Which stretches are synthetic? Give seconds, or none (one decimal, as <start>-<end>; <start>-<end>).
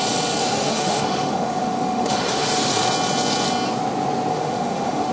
0.4-2.7; 4.3-5.1